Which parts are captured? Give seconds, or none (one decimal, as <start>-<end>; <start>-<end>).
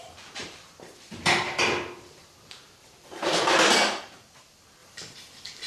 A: 0.0-0.4; 3.3-5.7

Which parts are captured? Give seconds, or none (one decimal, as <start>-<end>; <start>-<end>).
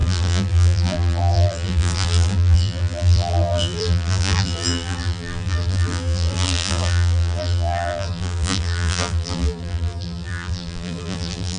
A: none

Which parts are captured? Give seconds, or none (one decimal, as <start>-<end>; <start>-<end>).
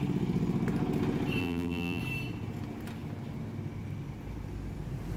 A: 0.0-1.4; 2.0-5.2